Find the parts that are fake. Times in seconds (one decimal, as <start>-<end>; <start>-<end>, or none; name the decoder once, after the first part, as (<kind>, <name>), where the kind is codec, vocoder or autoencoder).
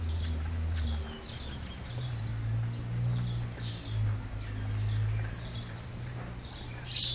0.0-2.3 (vocoder, BigVGAN v2); 5.3-7.1